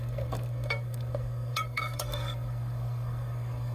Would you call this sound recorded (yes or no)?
no